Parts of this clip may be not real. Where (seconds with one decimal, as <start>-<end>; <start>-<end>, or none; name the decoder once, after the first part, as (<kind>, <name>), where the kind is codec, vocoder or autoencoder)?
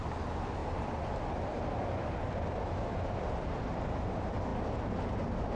none